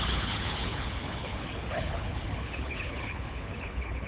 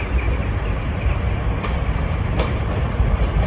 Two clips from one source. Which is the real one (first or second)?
second